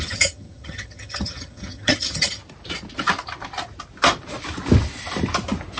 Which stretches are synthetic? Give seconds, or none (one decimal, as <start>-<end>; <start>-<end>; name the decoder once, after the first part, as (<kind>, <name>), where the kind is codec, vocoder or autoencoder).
0.0-2.4 (vocoder, HiFi-GAN)